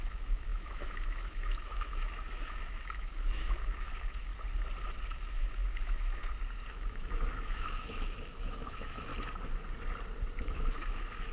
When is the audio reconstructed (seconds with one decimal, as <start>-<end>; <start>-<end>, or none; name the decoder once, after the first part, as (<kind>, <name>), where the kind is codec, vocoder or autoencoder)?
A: 0.0-4.3 (autoencoder, DAC-VAE); 5.1-6.2; 6.7-9.1; 10.4-11.3